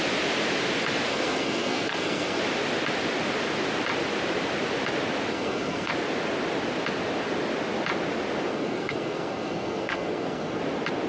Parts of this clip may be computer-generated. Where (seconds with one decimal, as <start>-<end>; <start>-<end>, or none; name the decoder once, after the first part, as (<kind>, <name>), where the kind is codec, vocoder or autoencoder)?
1.1-2.4 (codec, SNAC); 5.3-5.9; 8.5-10.6